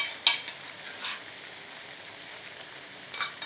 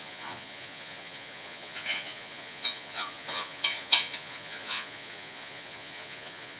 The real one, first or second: first